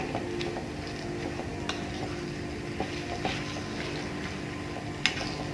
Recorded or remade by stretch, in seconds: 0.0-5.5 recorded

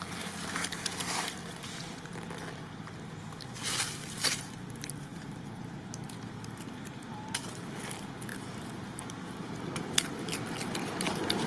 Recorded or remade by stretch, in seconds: 0.0-5.1 recorded; 5.1-5.9 remade; 5.9-8.3 recorded; 8.3-9.9 remade; 9.9-11.5 recorded

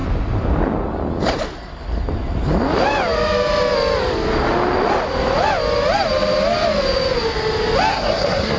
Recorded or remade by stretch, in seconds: 0.0-7.9 recorded; 7.9-8.6 remade

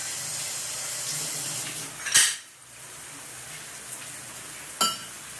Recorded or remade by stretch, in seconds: 0.0-5.4 recorded

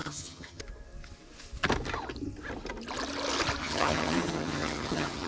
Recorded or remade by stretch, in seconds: 0.0-0.6 remade; 0.6-3.6 recorded; 3.6-5.3 remade

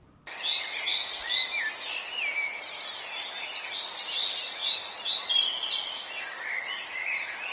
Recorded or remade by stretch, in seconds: 0.0-7.5 recorded

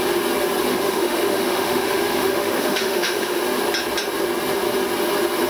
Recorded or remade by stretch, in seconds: 0.0-0.7 recorded; 0.7-3.4 remade; 3.4-5.5 recorded